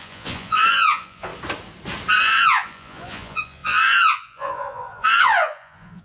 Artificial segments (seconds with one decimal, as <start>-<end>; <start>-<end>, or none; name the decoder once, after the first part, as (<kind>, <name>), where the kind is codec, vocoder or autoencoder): 0.0-1.3 (vocoder, Vocos); 2.2-6.0